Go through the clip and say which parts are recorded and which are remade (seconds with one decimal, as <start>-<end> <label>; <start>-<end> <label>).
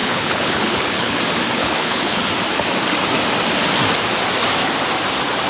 0.0-1.2 remade; 1.2-1.6 recorded; 1.6-2.2 remade; 2.2-5.5 recorded